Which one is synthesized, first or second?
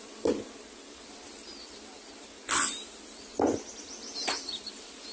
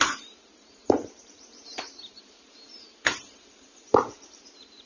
second